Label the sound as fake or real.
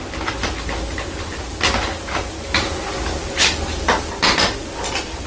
real